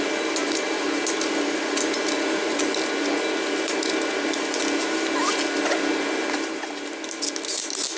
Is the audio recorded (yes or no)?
yes